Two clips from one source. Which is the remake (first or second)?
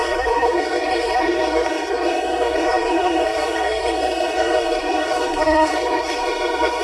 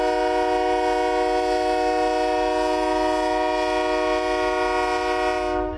first